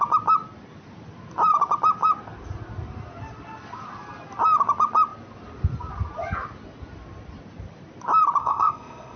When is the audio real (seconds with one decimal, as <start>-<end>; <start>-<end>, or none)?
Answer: 0.0-8.4